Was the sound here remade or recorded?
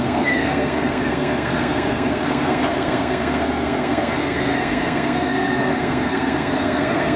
remade